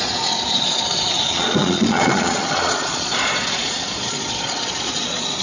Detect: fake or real fake